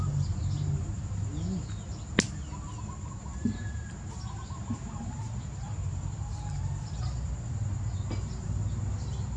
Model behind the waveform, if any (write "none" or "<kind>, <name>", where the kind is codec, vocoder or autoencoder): none